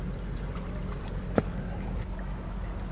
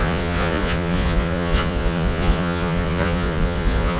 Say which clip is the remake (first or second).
second